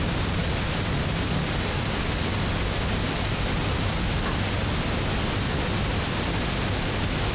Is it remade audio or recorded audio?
recorded